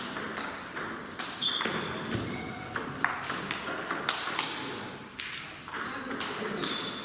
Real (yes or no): yes